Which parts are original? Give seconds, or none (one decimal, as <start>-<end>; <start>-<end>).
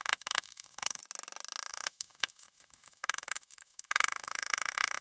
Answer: 1.0-1.7